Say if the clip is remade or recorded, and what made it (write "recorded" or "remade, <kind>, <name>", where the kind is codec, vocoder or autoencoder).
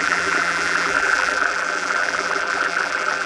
remade, vocoder, BigVGAN v2